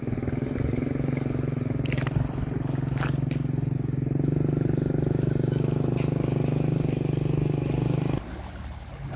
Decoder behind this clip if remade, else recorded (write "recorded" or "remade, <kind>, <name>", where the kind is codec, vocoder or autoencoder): recorded